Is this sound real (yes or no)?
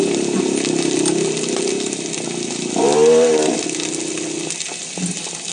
yes